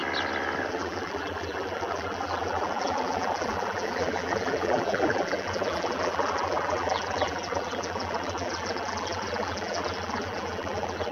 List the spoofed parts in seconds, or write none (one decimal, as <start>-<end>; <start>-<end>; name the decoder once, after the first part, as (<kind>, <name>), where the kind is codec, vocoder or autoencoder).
0.7-11.1 (vocoder, BigVGAN v2)

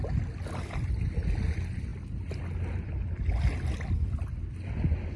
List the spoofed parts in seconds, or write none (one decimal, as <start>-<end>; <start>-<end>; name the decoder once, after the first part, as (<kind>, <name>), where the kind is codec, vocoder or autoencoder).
none

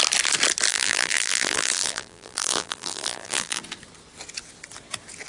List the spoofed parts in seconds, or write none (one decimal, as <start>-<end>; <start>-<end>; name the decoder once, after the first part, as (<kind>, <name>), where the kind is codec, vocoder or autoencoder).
0.7-3.6 (vocoder, BigVGAN v2)

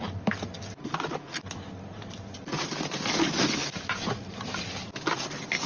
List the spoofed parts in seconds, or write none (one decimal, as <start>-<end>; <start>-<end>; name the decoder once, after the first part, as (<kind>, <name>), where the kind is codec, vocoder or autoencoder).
none

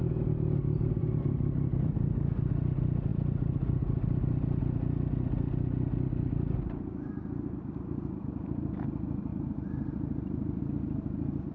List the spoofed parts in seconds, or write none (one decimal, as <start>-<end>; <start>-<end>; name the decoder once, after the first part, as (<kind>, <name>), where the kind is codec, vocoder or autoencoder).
1.0-2.5 (vocoder, BigVGAN v2); 3.1-4.6; 9.3-10.6

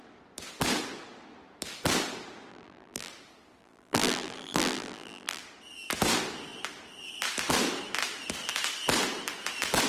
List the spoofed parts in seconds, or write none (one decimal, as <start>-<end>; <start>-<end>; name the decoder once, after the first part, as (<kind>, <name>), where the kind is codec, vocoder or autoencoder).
2.5-3.1 (vocoder, BigVGAN v2); 3.6-5.4